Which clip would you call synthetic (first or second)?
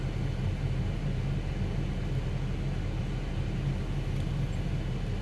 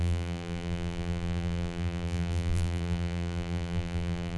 second